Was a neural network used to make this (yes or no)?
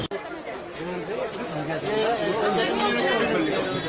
no